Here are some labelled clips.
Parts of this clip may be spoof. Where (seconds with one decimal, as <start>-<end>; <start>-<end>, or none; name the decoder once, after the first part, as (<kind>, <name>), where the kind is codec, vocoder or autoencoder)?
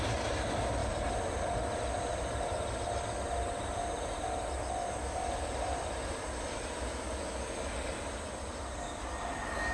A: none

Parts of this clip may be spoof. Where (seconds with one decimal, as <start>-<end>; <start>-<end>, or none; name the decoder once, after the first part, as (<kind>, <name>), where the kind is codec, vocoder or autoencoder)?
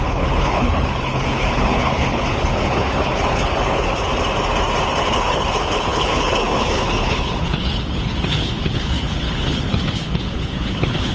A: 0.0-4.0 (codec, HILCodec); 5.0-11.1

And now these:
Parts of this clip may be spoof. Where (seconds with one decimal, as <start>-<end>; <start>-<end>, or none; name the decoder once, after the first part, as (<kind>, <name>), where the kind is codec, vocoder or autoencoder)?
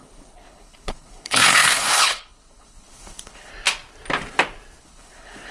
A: 0.0-3.5 (codec, HILCodec); 4.8-5.5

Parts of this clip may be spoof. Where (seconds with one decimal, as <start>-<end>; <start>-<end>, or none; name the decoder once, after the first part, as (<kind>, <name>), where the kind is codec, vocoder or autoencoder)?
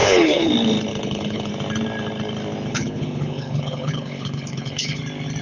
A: 0.0-0.5 (codec, HILCodec); 0.9-1.5; 2.7-5.0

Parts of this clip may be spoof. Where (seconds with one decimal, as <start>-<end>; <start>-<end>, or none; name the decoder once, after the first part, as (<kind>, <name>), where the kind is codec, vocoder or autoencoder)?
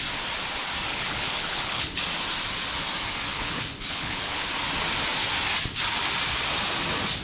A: 0.9-2.0 (codec, HILCodec); 3.3-4.5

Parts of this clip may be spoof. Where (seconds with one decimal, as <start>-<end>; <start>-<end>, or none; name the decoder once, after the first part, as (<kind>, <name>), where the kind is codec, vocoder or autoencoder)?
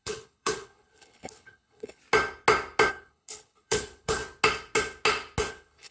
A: 0.0-2.0 (codec, HILCodec); 2.9-4.2; 5.5-5.9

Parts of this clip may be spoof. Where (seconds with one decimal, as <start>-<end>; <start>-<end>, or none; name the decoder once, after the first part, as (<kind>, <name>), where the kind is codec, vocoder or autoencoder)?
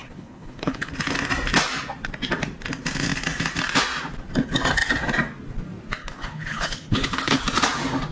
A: 0.0-0.9 (codec, HILCodec); 6.0-7.4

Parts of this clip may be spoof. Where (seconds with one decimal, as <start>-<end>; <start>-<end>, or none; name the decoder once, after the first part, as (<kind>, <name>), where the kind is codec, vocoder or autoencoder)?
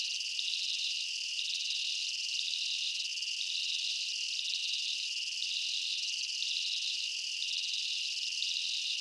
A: none